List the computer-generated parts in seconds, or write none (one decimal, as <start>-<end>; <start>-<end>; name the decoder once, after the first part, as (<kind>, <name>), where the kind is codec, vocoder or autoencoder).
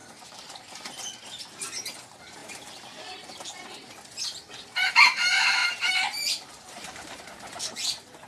0.0-0.7 (vocoder, BigVGAN v2); 5.6-7.2